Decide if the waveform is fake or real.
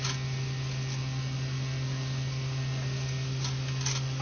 real